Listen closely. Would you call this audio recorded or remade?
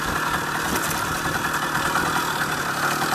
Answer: recorded